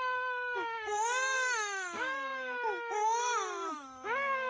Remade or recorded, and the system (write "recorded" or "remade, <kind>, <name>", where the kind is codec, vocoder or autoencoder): remade, autoencoder, DAC-VAE